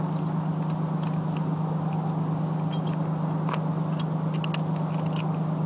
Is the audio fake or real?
real